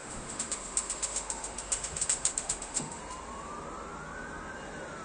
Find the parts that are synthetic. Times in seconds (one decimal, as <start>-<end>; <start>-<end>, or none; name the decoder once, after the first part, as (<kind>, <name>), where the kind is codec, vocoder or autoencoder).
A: 0.0-3.0 (autoencoder, DAC-VAE)